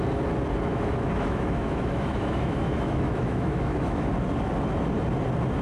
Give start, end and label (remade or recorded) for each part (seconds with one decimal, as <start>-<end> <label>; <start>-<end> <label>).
0.0-0.7 recorded; 0.7-4.1 remade; 4.1-5.6 recorded